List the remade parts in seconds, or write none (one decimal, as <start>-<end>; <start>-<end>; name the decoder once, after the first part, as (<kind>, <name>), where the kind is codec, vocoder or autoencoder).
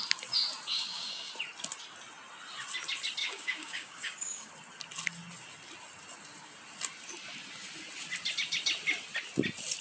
0.7-1.3 (codec, DAC); 3.2-4.5